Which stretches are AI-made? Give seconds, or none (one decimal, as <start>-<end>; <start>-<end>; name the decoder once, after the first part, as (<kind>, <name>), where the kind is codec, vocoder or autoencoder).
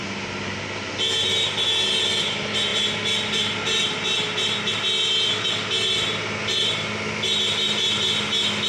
none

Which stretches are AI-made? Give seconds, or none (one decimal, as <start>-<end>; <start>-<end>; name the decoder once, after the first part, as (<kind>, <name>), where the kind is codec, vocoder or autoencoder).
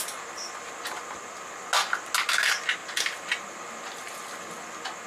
none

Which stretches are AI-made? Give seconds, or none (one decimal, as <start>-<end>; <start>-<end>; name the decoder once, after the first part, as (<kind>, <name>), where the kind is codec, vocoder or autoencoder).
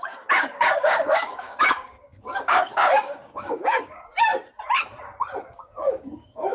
0.0-4.3 (codec, DAC); 5.4-6.5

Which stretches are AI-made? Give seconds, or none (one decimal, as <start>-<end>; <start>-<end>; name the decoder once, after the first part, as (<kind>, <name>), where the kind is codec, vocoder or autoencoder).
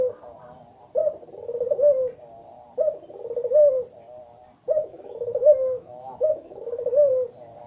4.8-6.8 (autoencoder, DAC-VAE)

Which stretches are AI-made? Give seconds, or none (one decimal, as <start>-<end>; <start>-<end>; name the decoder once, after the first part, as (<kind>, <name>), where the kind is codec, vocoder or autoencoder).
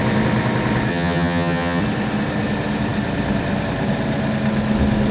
0.9-1.8 (vocoder, HiFi-GAN)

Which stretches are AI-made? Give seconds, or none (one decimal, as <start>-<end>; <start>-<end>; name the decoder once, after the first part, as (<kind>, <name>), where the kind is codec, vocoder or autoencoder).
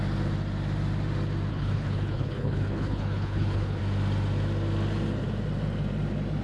1.5-3.8 (codec, HILCodec)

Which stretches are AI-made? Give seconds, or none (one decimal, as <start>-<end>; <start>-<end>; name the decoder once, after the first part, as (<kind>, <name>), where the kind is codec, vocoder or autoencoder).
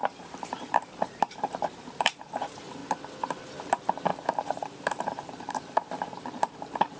0.0-2.8 (vocoder, BigVGAN v2); 3.4-7.0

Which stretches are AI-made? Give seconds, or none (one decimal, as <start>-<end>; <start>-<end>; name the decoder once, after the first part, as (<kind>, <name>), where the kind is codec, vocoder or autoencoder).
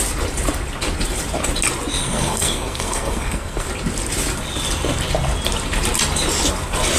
2.0-3.7 (codec, SNAC)